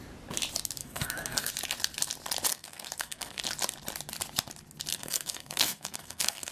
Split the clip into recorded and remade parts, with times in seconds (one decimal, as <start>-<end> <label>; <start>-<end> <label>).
0.0-0.8 recorded; 0.8-1.5 remade; 1.5-2.5 recorded; 2.5-3.4 remade; 3.4-4.9 recorded; 4.9-6.5 remade